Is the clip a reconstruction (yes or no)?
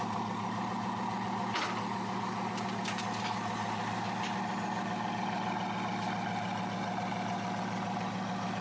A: no